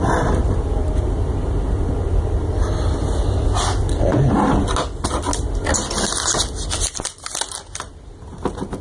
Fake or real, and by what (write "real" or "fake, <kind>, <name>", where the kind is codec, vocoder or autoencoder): real